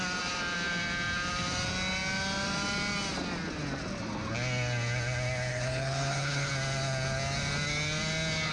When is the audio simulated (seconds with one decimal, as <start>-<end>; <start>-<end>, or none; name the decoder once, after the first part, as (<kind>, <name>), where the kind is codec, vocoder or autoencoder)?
5.5-6.5 (codec, HILCodec)